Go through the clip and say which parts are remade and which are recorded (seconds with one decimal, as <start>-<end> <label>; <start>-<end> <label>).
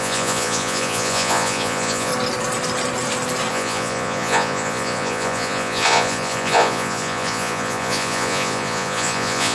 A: 0.0-2.1 remade; 2.1-3.5 recorded; 3.5-9.5 remade